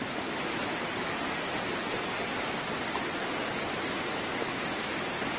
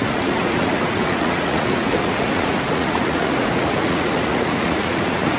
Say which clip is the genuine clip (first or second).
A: first